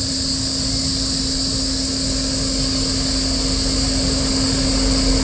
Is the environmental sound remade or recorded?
recorded